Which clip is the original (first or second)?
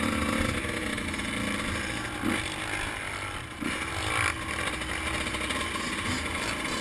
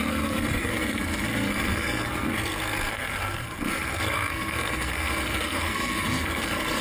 first